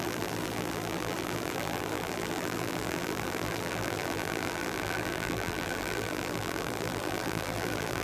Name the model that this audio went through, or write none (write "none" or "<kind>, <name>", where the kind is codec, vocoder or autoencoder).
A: vocoder, BigVGAN v2